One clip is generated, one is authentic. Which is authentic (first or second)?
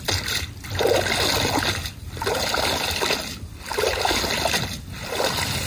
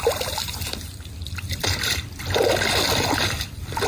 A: first